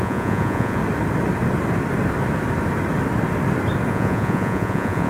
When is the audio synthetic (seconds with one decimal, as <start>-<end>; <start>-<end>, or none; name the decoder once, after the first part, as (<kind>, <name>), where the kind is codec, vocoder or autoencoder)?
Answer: 0.0-0.8 (vocoder, Vocos); 3.9-5.1